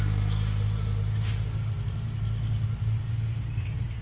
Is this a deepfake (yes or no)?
no